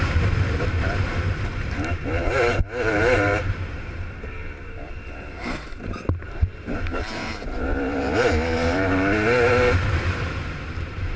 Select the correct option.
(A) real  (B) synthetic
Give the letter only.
B